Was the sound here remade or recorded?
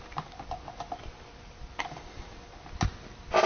recorded